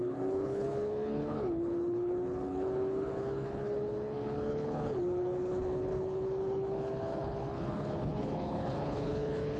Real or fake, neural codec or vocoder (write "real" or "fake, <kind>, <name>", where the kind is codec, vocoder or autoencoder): fake, codec, HILCodec